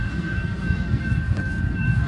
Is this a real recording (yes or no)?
no